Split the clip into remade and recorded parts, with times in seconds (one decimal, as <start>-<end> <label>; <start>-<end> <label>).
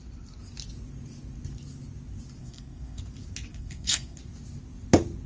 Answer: 0.0-2.4 recorded; 2.4-3.0 remade; 3.0-3.5 recorded; 3.5-4.2 remade; 4.2-5.3 recorded